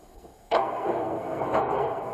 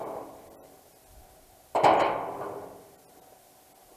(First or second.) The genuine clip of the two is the second